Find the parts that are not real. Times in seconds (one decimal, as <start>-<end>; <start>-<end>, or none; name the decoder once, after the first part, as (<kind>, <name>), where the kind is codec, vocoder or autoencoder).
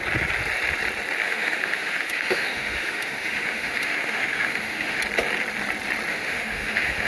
1.2-5.0 (autoencoder, DAC-VAE); 6.1-7.1